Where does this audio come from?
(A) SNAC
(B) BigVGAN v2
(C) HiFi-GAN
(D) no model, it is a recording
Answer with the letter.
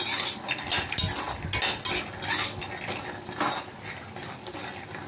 D